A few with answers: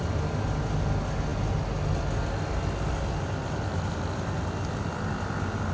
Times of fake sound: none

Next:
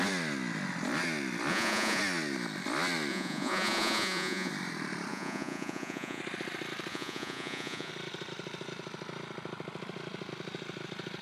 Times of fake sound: 1.5-2.0 (vocoder, Vocos); 3.1-4.5; 5.1-6.2; 6.9-7.9